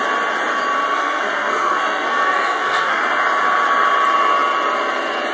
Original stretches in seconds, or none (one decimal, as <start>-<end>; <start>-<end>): 0.0-0.9; 3.0-5.3